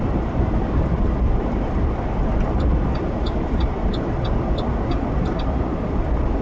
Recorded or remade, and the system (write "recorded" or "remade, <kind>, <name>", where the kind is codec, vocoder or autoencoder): remade, vocoder, BigVGAN v2